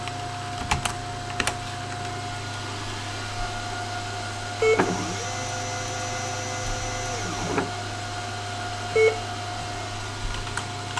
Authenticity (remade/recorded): recorded